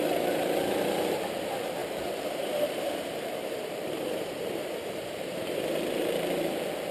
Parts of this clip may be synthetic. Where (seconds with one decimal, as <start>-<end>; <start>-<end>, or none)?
0.0-6.9